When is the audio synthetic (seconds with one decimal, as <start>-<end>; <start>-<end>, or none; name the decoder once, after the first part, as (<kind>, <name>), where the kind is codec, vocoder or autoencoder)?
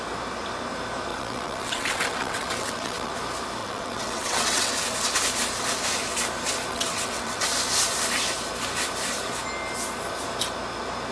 1.1-3.1 (vocoder, WaveNeXt); 3.6-4.7; 6.7-7.4